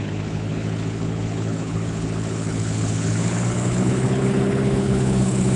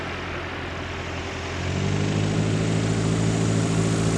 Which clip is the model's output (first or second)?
first